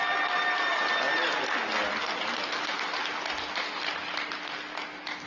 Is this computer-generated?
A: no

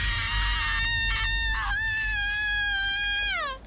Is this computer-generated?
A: no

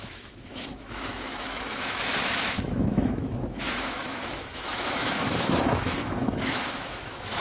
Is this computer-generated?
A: yes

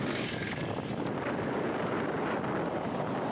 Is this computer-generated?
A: no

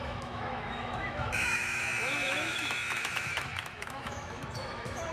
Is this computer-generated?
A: yes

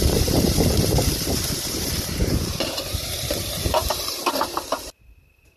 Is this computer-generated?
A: yes